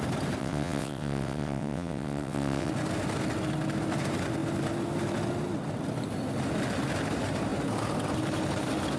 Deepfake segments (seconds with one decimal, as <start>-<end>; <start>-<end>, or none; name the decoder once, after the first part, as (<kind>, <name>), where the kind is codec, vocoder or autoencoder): 0.4-2.7 (vocoder, WaveNeXt)